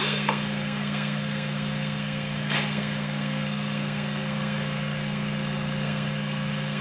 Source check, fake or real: fake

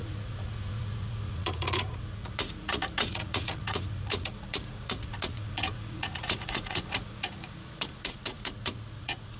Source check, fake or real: fake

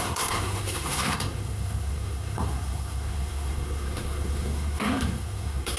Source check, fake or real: fake